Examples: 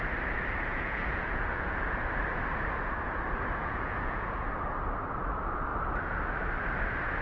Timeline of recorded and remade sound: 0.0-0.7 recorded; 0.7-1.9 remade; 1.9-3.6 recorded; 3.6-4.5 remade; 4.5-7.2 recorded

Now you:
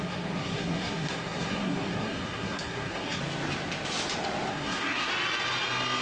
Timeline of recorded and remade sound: 0.0-3.2 remade; 3.2-4.5 recorded; 4.5-5.1 remade; 5.1-6.0 recorded

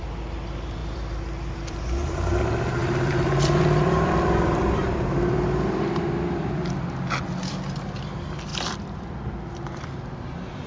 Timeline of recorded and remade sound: 0.0-0.8 recorded; 0.8-2.4 remade; 2.4-2.8 recorded; 2.8-6.8 remade; 6.8-8.5 recorded; 8.5-10.7 remade

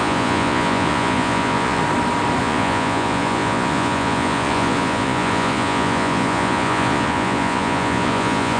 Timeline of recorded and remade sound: 0.0-1.8 remade; 1.8-2.4 recorded; 2.4-8.6 remade

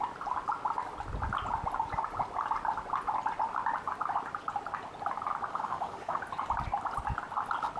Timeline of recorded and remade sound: 0.0-5.5 recorded; 5.5-6.2 remade; 6.2-7.8 recorded

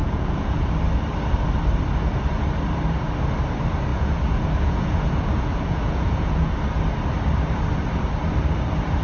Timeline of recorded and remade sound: 0.0-0.7 remade; 0.7-3.9 recorded; 3.9-6.5 remade; 6.5-9.0 recorded